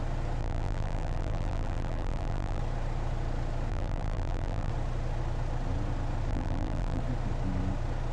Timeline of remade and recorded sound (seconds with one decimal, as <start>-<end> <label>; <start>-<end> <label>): 0.0-0.4 recorded; 0.4-2.6 remade; 2.6-3.7 recorded; 3.7-4.7 remade; 4.7-6.3 recorded; 6.3-7.0 remade; 7.0-8.1 recorded